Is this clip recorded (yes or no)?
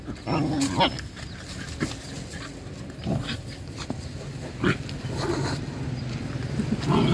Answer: yes